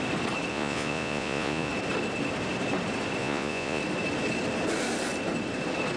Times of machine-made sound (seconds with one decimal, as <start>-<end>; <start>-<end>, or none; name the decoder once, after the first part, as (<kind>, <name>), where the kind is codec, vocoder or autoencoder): 0.5-1.7 (vocoder, Vocos); 3.2-3.8